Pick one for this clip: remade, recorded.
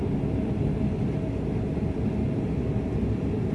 recorded